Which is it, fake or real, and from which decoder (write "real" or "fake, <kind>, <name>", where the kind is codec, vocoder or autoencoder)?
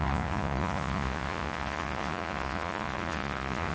fake, vocoder, Vocos